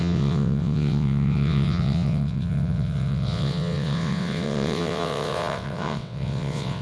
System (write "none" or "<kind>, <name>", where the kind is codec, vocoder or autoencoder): vocoder, WaveNeXt